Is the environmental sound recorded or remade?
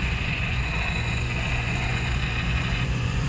remade